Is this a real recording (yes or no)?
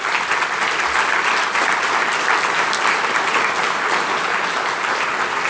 yes